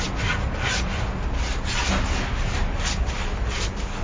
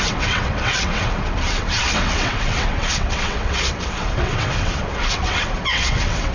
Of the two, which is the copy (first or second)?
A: second